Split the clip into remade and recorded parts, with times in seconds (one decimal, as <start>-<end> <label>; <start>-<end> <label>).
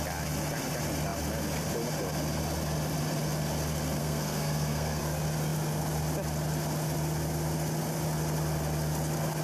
0.0-4.0 recorded; 4.0-5.0 remade; 5.0-9.4 recorded